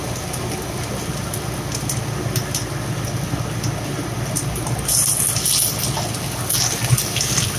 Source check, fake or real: real